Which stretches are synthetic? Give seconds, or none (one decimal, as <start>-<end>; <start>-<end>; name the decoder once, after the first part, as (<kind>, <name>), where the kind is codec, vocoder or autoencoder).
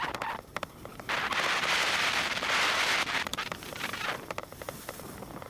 3.3-4.2 (vocoder, BigVGAN v2)